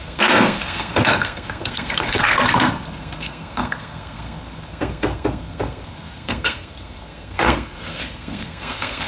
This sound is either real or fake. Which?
fake